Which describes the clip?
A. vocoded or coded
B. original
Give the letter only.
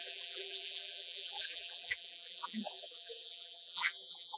A